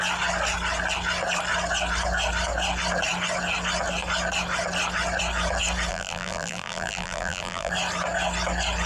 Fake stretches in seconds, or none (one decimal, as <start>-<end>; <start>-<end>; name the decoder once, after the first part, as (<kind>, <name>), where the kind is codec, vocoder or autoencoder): 5.9-7.7 (vocoder, BigVGAN v2)